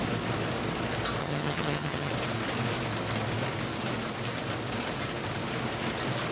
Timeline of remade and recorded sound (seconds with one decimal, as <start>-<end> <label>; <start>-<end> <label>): 0.0-1.2 recorded; 1.2-2.1 remade; 2.1-6.3 recorded